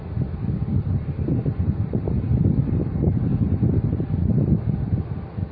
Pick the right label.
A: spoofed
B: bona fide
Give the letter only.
B